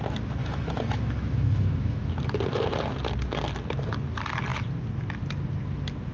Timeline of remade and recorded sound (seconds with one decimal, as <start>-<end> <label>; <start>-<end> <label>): 0.0-0.4 recorded; 0.4-2.2 remade; 2.2-6.1 recorded